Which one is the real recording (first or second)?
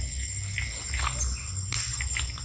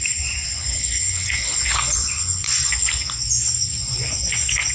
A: first